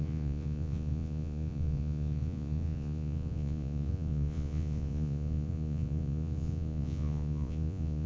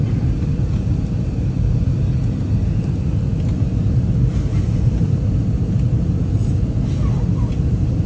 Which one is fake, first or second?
first